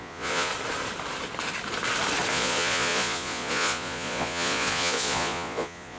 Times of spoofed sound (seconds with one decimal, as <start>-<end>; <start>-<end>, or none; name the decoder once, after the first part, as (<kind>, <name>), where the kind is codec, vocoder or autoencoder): 0.0-0.5 (vocoder, Vocos); 2.3-6.0

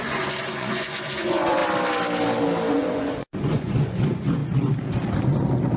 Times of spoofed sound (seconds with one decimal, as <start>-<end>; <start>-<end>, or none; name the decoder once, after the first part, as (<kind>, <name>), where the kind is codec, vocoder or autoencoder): 0.0-1.6 (vocoder, Vocos); 2.7-4.4

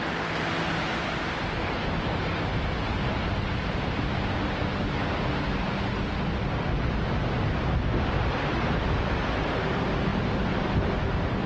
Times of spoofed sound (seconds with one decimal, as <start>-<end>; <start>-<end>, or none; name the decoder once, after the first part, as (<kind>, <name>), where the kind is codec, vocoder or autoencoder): none